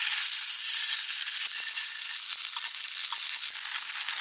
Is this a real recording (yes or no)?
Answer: yes